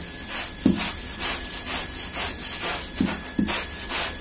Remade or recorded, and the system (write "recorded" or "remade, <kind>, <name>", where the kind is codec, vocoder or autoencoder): recorded